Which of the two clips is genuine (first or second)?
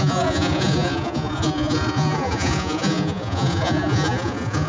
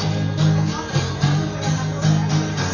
second